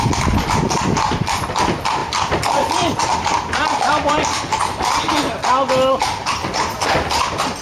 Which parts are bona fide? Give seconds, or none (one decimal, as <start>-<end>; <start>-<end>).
0.0-2.0; 4.1-7.6